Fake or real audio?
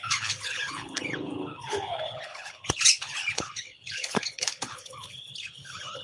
fake